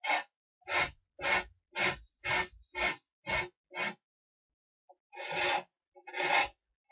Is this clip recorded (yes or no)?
yes